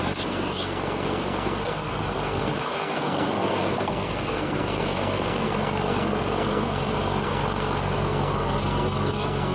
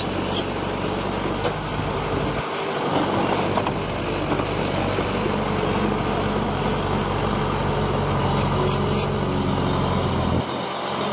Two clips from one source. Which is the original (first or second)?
second